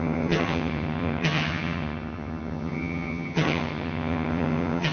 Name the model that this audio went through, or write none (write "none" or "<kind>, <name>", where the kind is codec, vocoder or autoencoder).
vocoder, HiFi-GAN